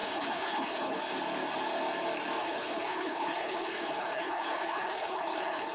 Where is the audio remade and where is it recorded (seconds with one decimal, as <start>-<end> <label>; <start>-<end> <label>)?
0.0-1.0 remade; 1.0-2.4 recorded; 2.4-5.7 remade